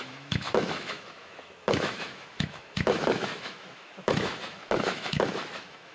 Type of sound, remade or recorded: remade